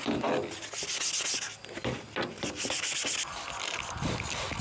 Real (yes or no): yes